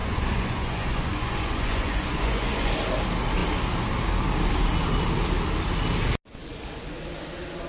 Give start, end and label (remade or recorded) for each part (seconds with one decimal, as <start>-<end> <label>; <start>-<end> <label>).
0.0-2.7 remade; 2.7-7.7 recorded